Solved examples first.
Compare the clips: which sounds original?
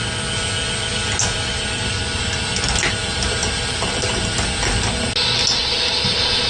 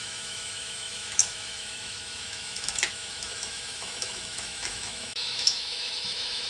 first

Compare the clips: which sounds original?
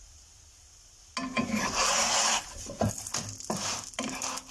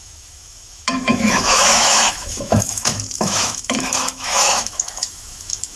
first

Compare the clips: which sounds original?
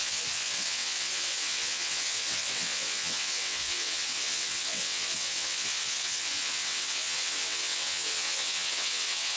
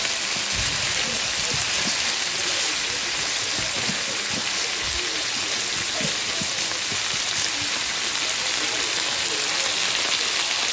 second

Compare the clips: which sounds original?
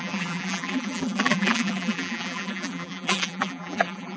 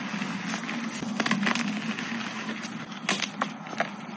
second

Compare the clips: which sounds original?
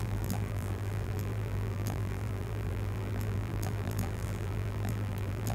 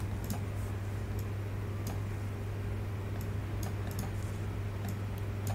second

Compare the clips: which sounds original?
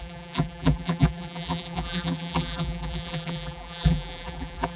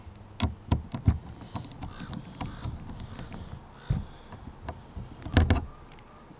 second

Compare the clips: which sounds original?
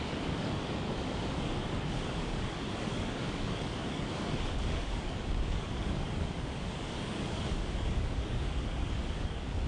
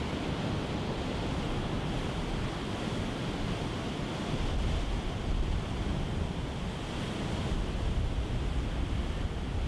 second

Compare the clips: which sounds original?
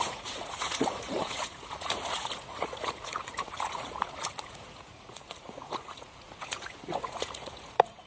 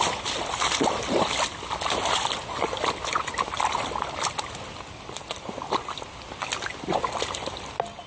second